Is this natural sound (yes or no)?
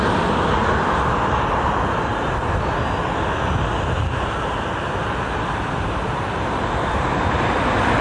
yes